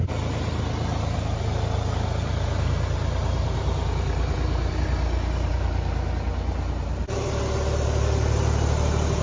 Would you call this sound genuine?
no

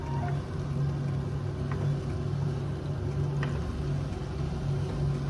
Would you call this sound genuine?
yes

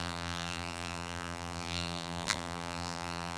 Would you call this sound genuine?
no